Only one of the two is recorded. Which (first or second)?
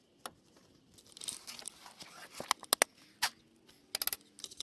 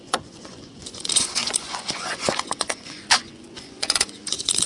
first